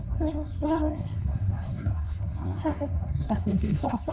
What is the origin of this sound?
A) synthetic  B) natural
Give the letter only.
A